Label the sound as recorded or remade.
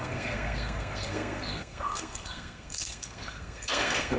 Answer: remade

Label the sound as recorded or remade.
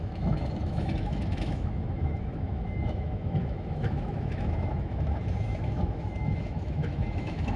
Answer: remade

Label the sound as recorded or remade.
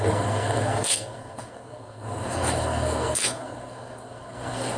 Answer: remade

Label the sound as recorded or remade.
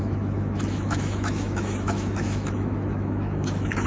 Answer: remade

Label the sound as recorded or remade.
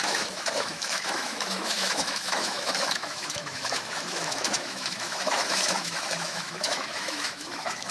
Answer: remade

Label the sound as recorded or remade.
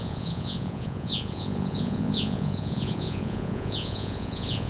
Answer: remade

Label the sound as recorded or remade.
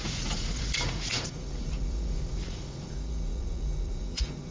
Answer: remade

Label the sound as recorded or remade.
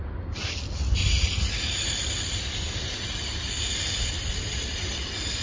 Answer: recorded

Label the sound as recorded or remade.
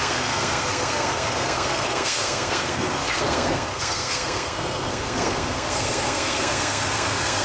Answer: remade